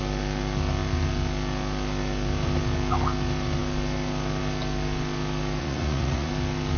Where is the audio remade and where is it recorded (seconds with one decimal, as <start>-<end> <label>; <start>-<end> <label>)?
0.0-5.6 recorded; 5.6-6.3 remade; 6.3-6.8 recorded